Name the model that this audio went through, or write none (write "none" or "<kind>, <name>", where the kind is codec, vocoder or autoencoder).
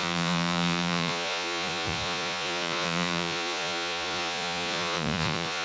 vocoder, Vocos